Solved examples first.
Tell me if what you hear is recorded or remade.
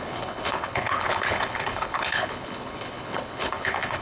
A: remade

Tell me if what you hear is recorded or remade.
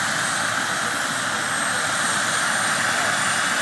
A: recorded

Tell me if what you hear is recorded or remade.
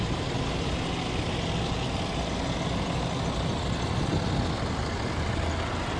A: recorded